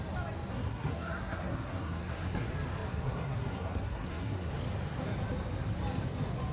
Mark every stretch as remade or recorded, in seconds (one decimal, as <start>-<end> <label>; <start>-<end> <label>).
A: 0.0-0.5 recorded; 0.5-2.5 remade; 2.5-2.9 recorded; 2.9-4.5 remade; 4.5-6.5 recorded